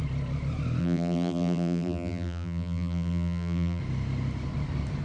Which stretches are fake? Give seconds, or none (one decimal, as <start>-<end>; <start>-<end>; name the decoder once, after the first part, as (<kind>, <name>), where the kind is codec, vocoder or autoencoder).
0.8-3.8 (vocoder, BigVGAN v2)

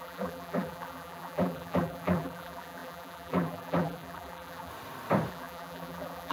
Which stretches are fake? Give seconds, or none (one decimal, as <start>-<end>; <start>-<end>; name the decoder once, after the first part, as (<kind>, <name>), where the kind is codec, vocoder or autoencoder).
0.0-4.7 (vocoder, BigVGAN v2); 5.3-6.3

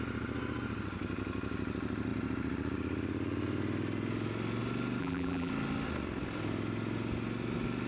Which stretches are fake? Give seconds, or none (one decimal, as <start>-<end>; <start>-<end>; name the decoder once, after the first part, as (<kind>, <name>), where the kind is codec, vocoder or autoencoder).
5.0-5.5 (vocoder, BigVGAN v2)